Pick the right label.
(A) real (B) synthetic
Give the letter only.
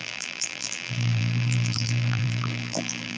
B